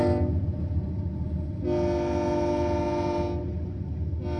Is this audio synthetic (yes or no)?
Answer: no